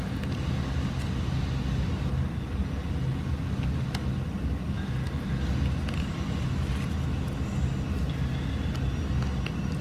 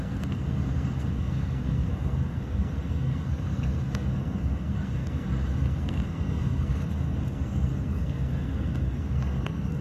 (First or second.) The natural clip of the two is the first